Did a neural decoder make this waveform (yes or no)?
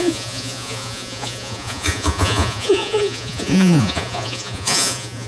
yes